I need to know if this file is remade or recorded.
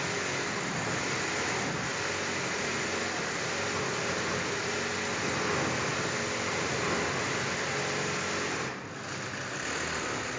recorded